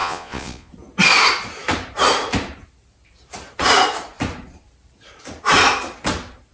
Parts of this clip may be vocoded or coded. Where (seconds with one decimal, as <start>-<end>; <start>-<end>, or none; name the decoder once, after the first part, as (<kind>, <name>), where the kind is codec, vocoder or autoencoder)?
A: 0.0-0.7 (vocoder, Vocos)